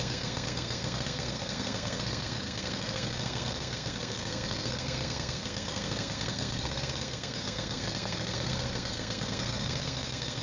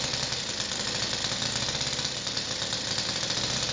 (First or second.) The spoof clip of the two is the first